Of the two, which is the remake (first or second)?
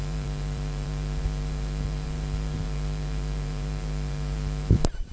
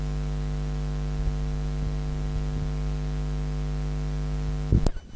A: first